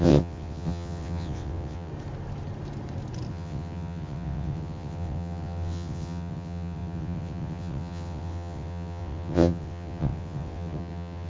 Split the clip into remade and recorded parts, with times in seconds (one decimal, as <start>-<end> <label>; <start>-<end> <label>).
0.0-1.9 remade; 1.9-3.3 recorded; 3.3-11.3 remade